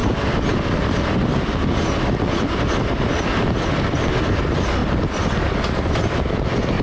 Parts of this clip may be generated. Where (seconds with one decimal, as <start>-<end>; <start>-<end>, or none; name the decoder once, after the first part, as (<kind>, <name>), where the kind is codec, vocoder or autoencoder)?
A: 3.5-4.8 (vocoder, BigVGAN v2); 5.6-6.8